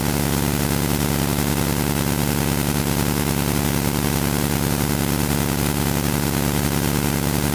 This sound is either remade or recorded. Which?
recorded